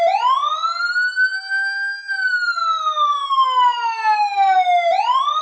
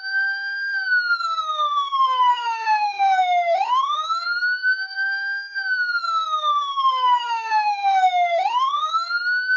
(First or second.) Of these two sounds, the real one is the first